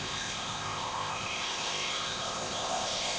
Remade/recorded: remade